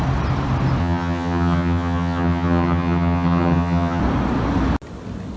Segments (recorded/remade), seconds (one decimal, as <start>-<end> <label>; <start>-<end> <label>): 0.0-0.8 recorded; 0.8-4.0 remade; 4.0-5.4 recorded